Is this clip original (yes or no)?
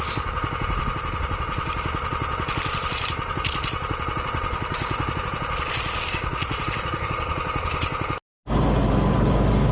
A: yes